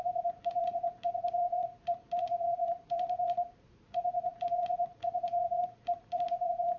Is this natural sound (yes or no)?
no